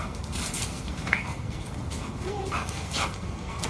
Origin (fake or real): fake